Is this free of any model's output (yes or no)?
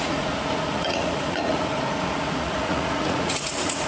no